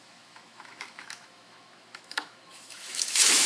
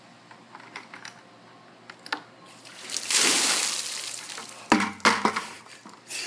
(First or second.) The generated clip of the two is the first